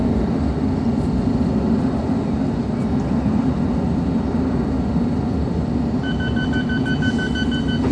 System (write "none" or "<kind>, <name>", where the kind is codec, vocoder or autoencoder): none